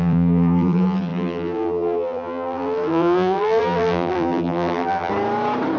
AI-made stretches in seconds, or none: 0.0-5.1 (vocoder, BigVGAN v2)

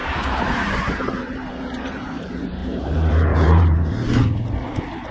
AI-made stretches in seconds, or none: 0.0-1.5 (vocoder, BigVGAN v2); 2.6-4.2

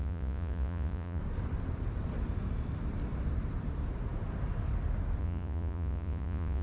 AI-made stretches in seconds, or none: 0.0-1.2 (vocoder, Vocos); 5.2-6.6

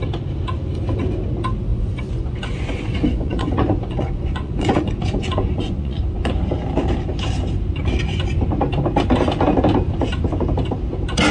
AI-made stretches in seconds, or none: 1.7-6.3 (vocoder, Vocos)